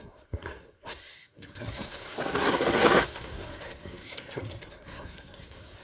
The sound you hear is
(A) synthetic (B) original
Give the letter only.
A